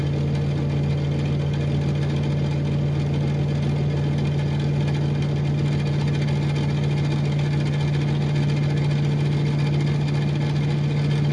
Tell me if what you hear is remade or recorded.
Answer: recorded